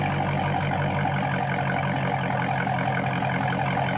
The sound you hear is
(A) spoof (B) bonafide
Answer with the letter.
B